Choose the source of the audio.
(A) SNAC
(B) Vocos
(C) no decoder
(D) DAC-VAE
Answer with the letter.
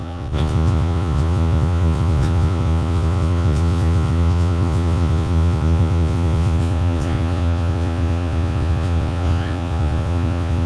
B